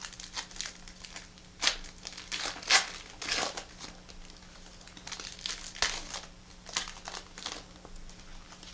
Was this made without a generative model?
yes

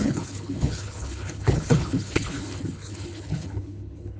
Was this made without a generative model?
no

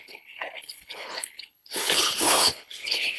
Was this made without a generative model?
no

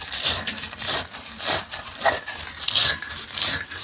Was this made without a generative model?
yes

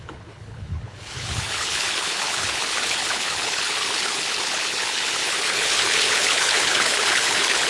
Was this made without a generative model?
no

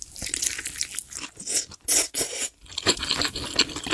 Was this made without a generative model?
yes